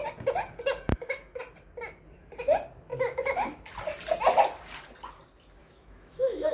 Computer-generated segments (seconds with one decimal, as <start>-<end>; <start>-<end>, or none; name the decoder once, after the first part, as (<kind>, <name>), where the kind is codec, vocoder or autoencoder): 0.9-1.4 (autoencoder, DAC-VAE); 2.9-3.6; 5.6-6.5